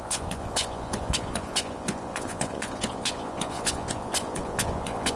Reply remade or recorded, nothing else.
remade